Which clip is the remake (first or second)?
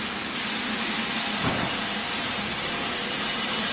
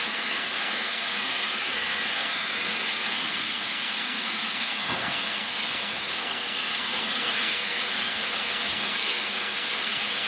second